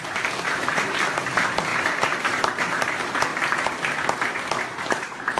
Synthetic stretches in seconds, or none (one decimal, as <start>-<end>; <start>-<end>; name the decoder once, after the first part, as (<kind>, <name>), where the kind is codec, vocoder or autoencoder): 0.0-3.3 (vocoder, BigVGAN v2); 4.9-5.4